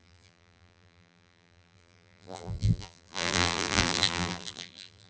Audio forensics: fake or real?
fake